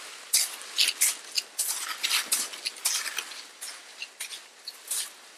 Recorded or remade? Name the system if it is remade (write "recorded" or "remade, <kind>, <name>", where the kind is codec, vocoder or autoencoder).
recorded